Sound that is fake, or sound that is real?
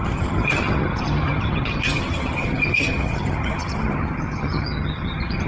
fake